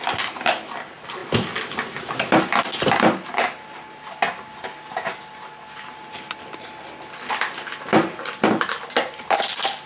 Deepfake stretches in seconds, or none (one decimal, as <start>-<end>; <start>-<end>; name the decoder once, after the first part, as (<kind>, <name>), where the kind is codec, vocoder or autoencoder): none